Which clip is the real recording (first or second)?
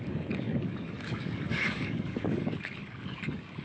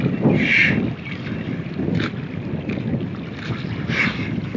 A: second